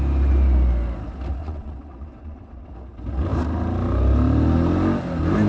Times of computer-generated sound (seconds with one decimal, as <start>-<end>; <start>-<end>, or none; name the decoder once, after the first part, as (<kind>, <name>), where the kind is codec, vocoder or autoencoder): 1.4-2.7 (vocoder, WaveNeXt)